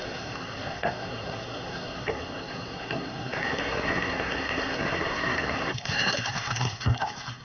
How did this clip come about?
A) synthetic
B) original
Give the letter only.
A